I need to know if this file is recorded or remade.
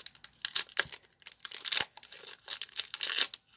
recorded